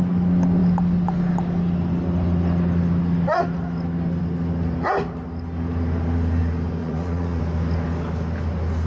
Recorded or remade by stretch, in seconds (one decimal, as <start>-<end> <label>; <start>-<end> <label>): 0.0-6.8 recorded; 6.8-7.4 remade; 7.4-8.9 recorded